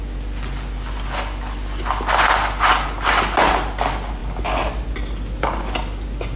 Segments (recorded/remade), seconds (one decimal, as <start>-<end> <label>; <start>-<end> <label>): 0.0-6.4 recorded